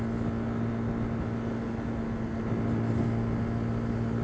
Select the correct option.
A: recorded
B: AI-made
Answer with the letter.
A